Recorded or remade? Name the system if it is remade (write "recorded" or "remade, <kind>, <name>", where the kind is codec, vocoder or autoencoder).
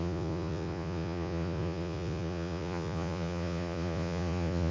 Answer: remade, vocoder, Vocos